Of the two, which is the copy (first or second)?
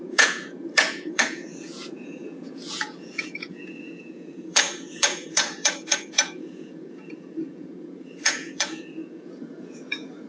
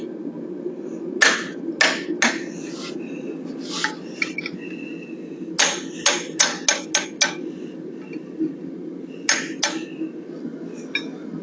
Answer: first